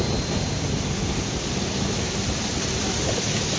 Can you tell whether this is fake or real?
real